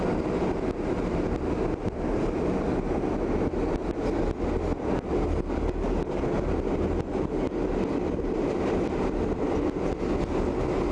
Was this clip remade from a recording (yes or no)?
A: no